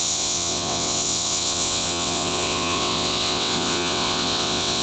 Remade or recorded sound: remade